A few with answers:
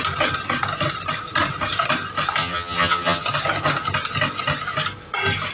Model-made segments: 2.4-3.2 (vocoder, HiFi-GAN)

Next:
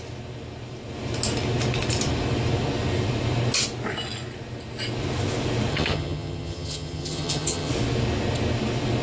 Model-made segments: 5.7-7.7 (vocoder, HiFi-GAN)